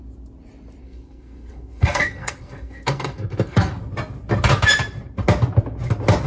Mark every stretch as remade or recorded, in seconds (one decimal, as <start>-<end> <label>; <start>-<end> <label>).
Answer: 0.0-0.8 recorded; 0.8-3.7 remade; 3.7-6.3 recorded